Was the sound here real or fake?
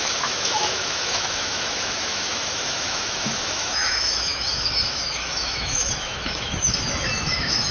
fake